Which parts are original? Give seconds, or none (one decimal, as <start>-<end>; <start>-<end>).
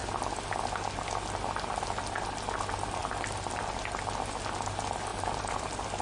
0.0-3.0; 3.6-5.1